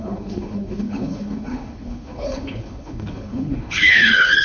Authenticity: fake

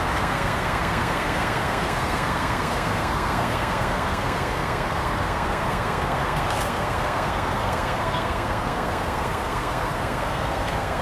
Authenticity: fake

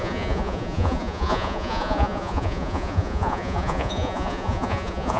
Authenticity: fake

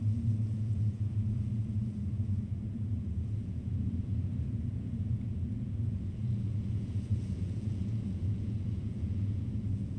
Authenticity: fake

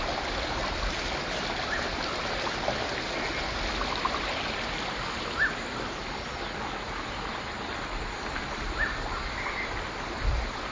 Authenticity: real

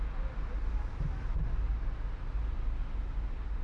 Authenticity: real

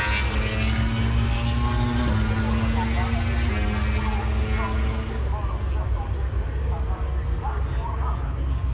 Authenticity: real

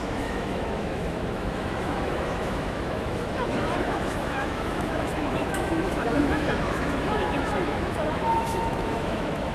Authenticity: fake